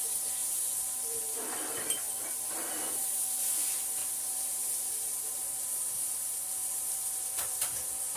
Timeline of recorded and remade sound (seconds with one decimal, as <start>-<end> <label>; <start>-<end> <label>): 0.0-8.2 remade